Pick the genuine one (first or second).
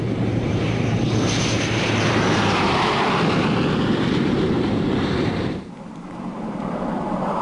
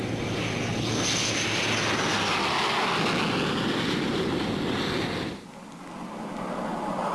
second